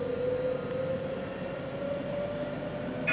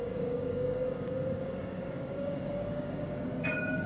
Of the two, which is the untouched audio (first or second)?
first